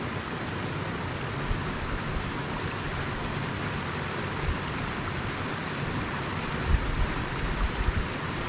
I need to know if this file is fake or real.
real